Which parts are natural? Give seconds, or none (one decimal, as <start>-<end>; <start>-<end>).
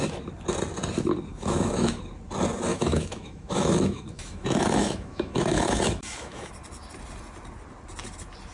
0.0-1.3; 2.0-2.7; 6.5-8.5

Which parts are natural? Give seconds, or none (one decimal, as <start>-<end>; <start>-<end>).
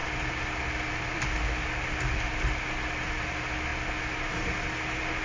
0.0-5.2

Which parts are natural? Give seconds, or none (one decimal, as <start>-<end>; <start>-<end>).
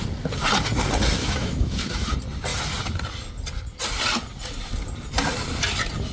0.0-1.2; 2.1-6.1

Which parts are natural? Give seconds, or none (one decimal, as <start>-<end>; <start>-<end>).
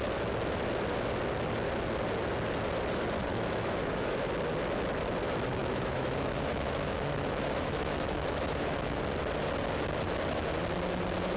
0.0-3.3; 4.3-5.6; 9.0-11.4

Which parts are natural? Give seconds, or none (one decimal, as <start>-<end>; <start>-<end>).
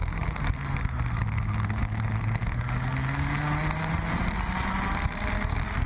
0.0-5.9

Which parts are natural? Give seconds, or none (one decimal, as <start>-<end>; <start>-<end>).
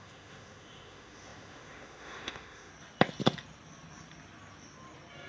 2.7-5.3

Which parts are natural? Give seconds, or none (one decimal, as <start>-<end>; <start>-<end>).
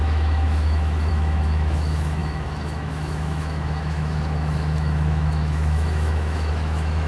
none